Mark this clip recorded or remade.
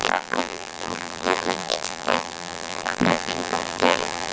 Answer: remade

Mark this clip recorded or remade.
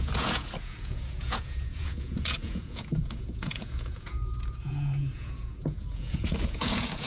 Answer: remade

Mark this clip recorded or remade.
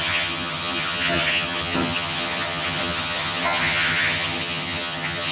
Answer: remade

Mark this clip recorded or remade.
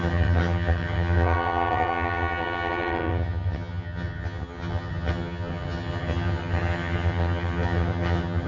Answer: remade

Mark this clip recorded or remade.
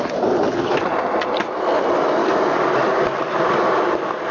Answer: recorded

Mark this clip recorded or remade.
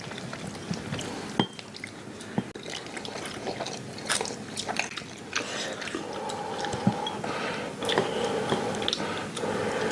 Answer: recorded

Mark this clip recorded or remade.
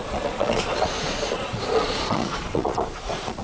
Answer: remade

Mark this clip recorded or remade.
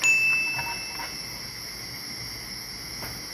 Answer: recorded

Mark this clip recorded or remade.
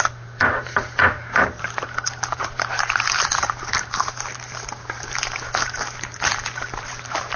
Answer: remade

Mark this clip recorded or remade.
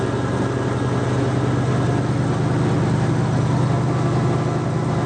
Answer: recorded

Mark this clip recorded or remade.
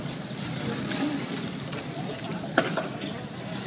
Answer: recorded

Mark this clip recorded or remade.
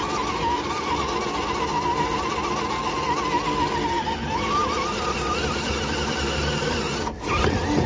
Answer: recorded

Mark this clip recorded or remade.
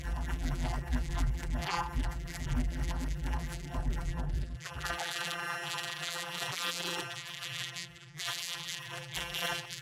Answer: remade